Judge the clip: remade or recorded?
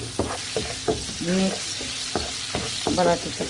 recorded